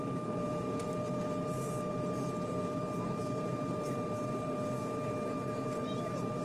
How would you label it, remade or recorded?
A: remade